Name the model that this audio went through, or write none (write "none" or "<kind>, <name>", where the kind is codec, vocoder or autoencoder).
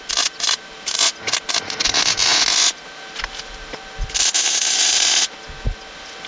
none